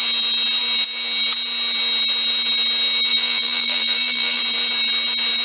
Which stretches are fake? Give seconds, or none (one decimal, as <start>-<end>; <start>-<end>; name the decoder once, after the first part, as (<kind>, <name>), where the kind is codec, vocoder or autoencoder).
3.1-4.4 (vocoder, BigVGAN v2)